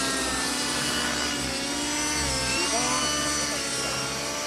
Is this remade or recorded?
recorded